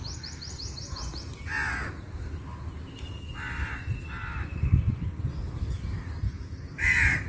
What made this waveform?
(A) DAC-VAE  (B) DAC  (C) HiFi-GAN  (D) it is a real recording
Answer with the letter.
D